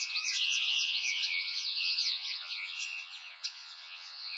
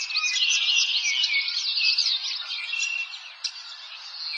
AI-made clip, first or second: first